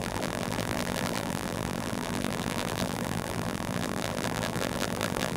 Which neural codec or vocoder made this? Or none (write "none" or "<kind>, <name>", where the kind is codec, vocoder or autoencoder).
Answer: vocoder, BigVGAN v2